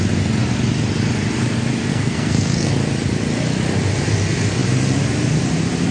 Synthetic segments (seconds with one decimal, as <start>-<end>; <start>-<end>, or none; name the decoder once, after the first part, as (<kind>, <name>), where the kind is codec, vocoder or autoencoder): 1.9-2.7 (codec, SNAC)